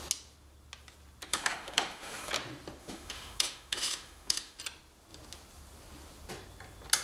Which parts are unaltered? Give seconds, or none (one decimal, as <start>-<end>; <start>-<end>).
0.0-1.3; 2.3-2.8; 4.6-7.0